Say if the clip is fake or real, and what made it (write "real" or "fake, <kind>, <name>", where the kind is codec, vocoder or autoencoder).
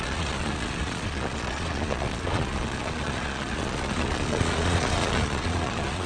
fake, vocoder, Vocos